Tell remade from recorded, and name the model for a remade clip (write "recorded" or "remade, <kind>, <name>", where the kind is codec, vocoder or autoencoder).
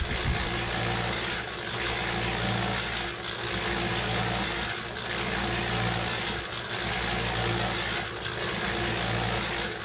recorded